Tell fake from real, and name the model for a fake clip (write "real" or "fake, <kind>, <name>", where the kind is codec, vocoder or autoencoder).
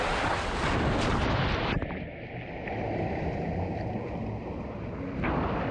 real